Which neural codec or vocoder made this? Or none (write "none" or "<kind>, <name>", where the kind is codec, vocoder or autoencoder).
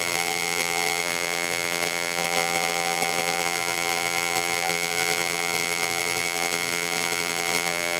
vocoder, BigVGAN v2